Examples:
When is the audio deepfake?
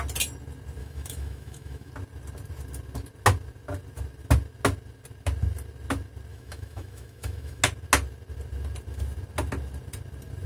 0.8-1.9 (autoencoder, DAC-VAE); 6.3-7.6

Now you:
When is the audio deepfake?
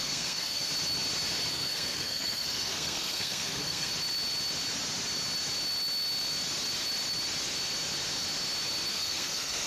0.0-0.7 (codec, SNAC); 1.5-3.9; 8.9-9.7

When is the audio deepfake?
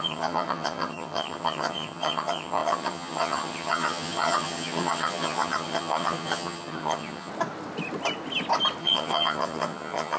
0.0-7.3 (vocoder, HiFi-GAN); 8.8-10.2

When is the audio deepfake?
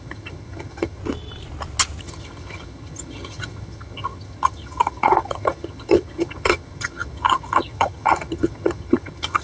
0.0-1.0 (vocoder, HiFi-GAN); 2.0-9.4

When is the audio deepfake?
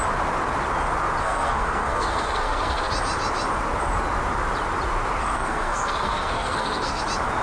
1.2-2.9 (codec, SNAC); 5.2-7.0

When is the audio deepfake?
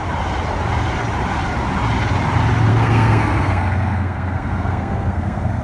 2.7-5.6 (codec, SNAC)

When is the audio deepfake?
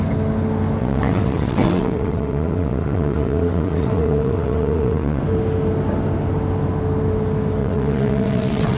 0.8-5.2 (vocoder, WaveNeXt); 7.6-8.8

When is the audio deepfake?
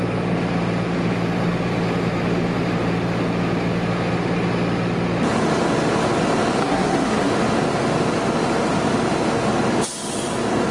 6.6-7.3 (codec, SNAC)